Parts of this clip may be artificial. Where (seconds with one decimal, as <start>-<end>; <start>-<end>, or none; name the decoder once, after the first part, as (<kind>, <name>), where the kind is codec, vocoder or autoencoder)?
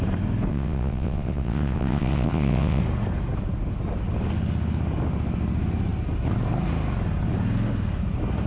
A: 0.5-2.8 (vocoder, WaveNeXt)